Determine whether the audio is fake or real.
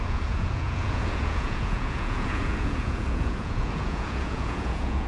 fake